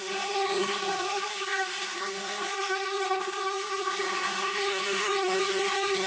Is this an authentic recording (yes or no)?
no